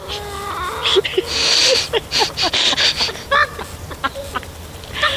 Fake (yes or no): no